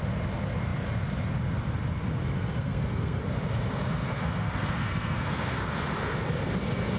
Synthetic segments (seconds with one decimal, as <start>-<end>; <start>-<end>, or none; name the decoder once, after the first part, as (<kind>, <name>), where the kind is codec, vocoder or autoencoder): 2.2-3.2 (codec, SNAC); 4.0-5.6